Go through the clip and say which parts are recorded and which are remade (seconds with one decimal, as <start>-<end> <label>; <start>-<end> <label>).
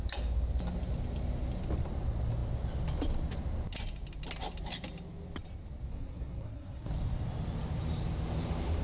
0.0-5.9 recorded; 5.9-6.9 remade; 6.9-8.8 recorded